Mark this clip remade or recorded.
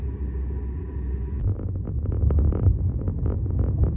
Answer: recorded